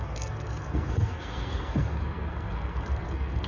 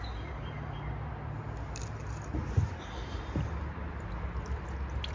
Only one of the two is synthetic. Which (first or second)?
first